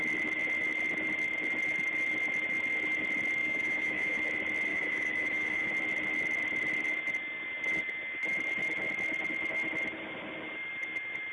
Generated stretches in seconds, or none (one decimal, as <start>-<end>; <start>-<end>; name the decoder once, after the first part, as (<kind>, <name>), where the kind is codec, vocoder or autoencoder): 3.4-4.2 (autoencoder, DAC-VAE); 4.7-5.7